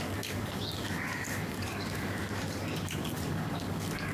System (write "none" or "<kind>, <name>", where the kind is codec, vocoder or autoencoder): codec, DAC